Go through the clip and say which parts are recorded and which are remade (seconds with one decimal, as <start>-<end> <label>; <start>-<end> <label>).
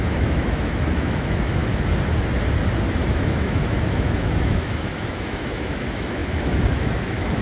0.0-1.6 remade; 1.6-2.9 recorded; 2.9-7.4 remade